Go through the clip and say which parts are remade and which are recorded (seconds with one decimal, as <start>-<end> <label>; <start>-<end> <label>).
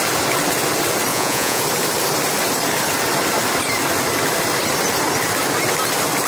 0.0-1.1 recorded; 1.1-1.6 remade; 1.6-6.3 recorded